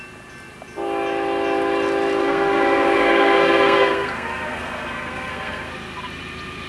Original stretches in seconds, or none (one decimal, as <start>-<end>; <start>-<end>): 0.0-2.2; 5.7-6.7